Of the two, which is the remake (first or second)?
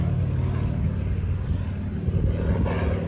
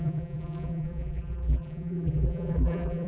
second